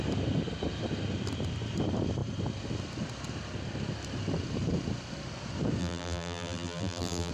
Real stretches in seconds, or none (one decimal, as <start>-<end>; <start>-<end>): 0.0-5.8